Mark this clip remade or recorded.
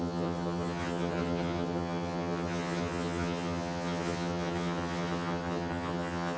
remade